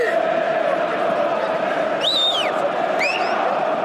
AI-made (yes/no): no